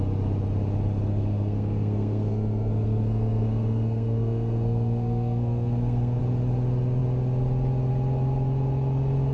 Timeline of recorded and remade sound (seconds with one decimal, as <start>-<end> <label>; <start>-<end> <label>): 0.0-1.1 recorded; 1.1-6.2 remade; 6.2-9.3 recorded